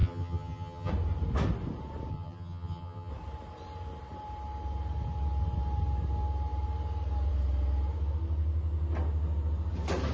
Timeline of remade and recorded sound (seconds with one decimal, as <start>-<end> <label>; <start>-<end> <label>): 0.0-0.9 remade; 0.9-2.1 recorded; 2.1-3.1 remade; 3.1-10.1 recorded